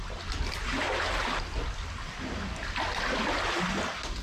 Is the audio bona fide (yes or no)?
yes